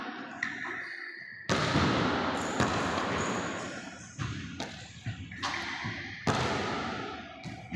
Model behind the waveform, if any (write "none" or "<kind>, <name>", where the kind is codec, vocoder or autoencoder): none